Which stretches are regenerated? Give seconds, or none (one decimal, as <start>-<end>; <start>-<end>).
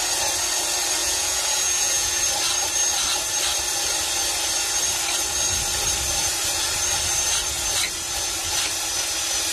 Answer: 1.0-2.2